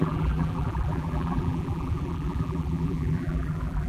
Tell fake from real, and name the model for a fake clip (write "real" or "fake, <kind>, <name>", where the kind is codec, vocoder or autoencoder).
fake, vocoder, BigVGAN v2